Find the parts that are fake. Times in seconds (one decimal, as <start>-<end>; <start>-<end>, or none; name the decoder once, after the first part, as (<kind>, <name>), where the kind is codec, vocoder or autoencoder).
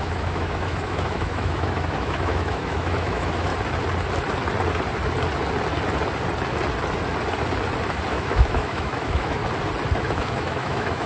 0.0-3.5 (autoencoder, DAC-VAE); 8.1-9.4; 10.0-11.1